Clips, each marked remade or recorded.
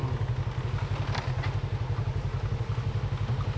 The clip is recorded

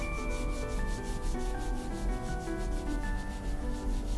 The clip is remade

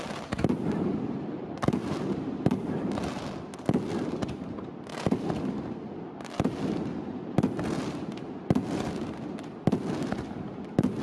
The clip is recorded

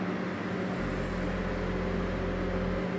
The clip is recorded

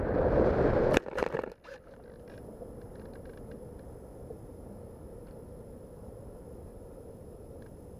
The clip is recorded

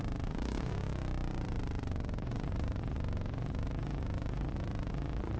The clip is remade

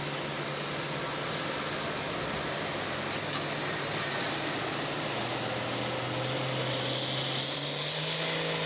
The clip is recorded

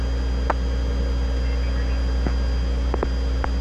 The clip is recorded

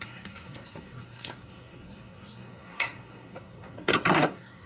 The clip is remade